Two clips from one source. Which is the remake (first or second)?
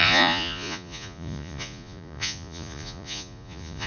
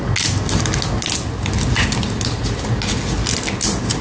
first